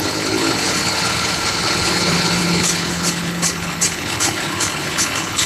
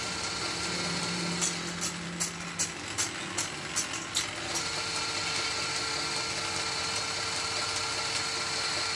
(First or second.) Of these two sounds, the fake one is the first